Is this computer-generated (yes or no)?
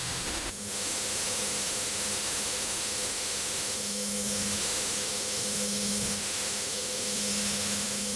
yes